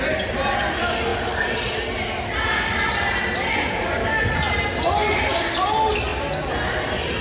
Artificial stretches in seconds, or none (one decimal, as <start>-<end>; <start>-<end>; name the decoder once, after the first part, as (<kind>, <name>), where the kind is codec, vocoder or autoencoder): none